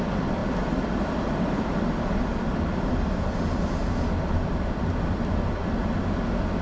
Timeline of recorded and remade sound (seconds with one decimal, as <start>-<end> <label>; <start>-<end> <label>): 0.0-0.4 recorded; 0.4-3.2 remade; 3.2-6.6 recorded